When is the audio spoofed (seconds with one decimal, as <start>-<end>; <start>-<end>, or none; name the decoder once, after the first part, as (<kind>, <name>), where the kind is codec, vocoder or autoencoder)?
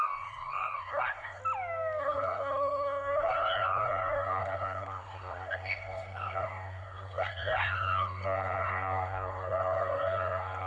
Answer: 0.0-1.4 (codec, SNAC); 2.0-10.7